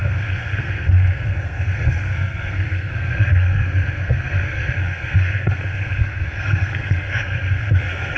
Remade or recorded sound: remade